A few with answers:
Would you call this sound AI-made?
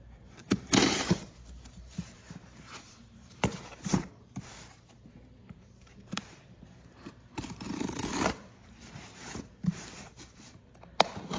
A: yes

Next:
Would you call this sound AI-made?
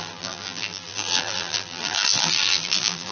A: yes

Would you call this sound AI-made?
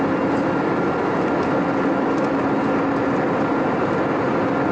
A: no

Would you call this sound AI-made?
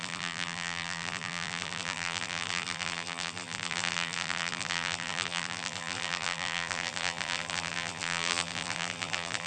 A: yes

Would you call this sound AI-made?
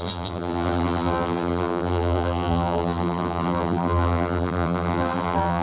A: yes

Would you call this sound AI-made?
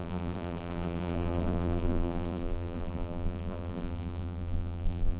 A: yes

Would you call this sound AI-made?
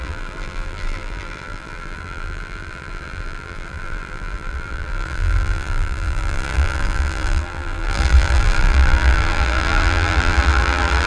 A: yes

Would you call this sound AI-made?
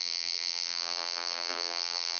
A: yes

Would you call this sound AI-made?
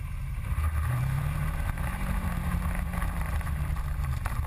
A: yes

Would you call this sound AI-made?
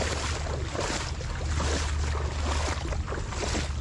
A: no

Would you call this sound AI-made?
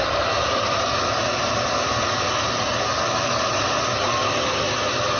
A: no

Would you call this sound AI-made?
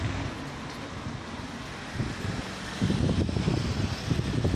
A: no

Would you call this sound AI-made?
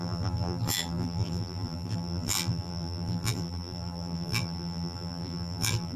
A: yes